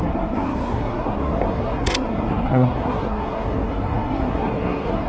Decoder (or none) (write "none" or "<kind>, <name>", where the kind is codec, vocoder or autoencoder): codec, SNAC